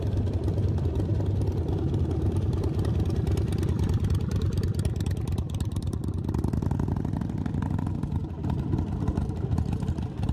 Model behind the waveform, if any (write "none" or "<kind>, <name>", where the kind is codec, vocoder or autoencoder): none